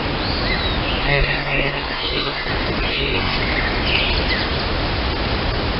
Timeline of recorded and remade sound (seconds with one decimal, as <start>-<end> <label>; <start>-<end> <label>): 0.0-1.0 recorded; 1.0-2.5 remade; 2.5-2.9 recorded; 2.9-3.4 remade; 3.4-5.8 recorded